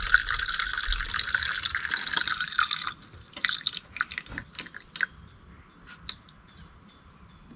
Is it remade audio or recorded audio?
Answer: recorded